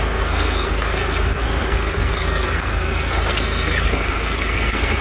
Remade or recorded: remade